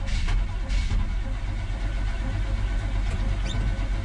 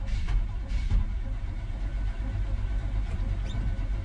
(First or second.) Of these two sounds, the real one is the first